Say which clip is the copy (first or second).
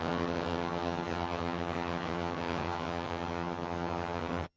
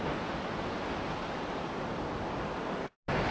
first